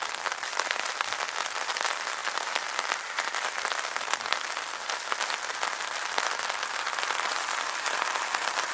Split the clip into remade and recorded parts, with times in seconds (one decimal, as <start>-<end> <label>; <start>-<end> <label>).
0.0-8.7 recorded